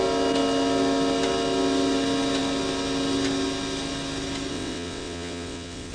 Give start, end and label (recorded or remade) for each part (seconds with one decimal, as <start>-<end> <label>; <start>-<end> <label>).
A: 0.0-4.5 recorded; 4.5-5.9 remade